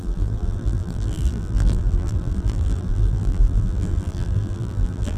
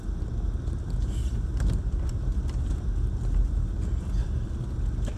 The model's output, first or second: first